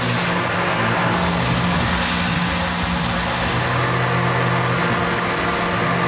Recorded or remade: recorded